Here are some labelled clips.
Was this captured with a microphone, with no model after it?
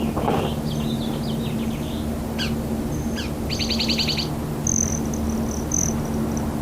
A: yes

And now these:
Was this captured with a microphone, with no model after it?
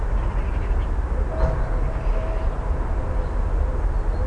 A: yes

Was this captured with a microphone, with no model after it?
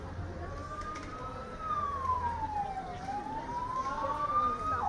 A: yes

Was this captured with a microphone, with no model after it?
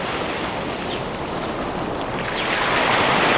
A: yes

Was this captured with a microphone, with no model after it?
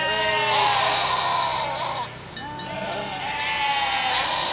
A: yes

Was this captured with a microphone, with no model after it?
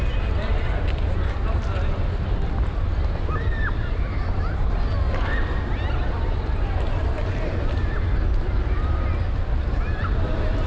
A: yes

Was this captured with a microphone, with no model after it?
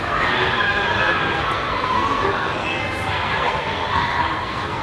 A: no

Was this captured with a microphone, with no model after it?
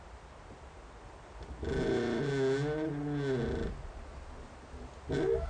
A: yes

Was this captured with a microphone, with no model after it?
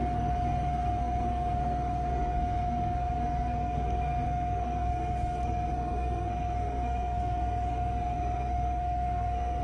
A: no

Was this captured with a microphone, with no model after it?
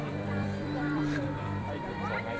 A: no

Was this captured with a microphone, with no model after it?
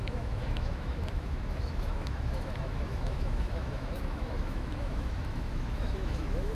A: no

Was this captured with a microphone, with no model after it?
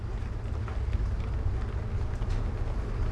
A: yes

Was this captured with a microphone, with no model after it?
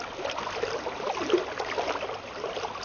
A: yes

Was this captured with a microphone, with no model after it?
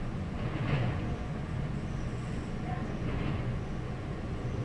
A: no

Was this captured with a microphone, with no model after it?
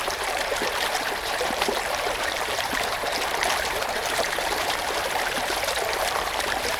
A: no